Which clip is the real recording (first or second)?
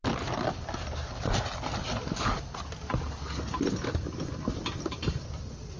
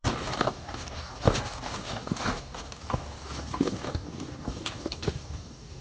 first